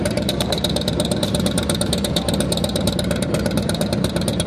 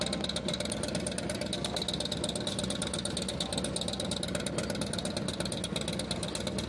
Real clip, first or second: second